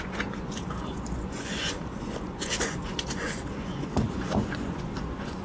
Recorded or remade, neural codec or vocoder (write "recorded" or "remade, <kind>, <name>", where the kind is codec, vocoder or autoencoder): remade, vocoder, Vocos